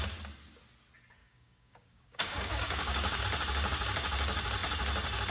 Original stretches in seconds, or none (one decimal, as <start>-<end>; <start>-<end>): 0.0-1.2; 3.2-5.3